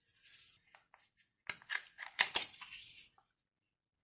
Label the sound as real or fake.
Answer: real